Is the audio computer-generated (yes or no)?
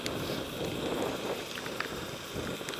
no